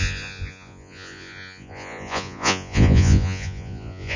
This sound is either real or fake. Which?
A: fake